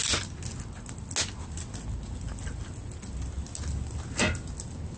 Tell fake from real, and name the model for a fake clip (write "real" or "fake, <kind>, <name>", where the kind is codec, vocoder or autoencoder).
real